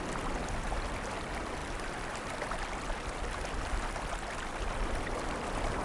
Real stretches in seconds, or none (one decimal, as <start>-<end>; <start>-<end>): 0.0-5.8